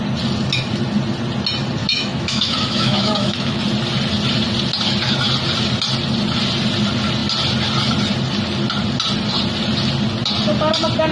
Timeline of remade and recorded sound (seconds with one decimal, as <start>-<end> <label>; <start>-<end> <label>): 0.0-1.8 recorded; 1.8-3.6 remade; 3.6-11.1 recorded